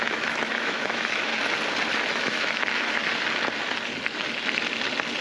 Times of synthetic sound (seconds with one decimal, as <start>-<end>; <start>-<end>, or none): 0.0-1.3; 2.1-3.0